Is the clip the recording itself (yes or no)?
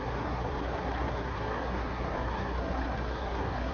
no